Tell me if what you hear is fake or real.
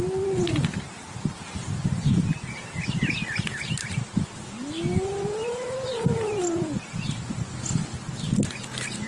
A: real